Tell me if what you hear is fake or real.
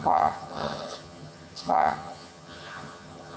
fake